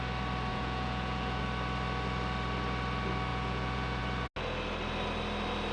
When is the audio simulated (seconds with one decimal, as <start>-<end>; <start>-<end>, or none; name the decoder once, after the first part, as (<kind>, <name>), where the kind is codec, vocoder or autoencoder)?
0.5-1.4 (vocoder, Vocos); 3.3-4.0